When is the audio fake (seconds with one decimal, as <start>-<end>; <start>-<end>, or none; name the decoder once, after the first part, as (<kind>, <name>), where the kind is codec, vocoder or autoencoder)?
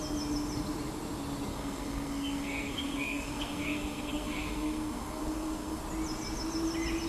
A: 1.5-5.8 (codec, SNAC)